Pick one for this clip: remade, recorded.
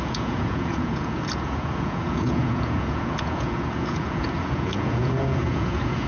remade